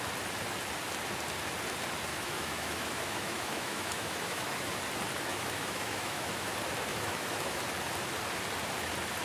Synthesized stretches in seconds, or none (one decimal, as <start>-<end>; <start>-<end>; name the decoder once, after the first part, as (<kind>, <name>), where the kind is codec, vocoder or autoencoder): 2.1-4.8 (autoencoder, DAC-VAE); 5.3-6.5; 6.9-7.6